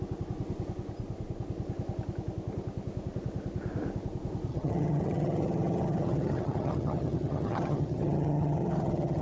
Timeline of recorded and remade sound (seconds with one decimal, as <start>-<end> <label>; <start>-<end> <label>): 0.0-4.5 recorded; 4.5-9.2 remade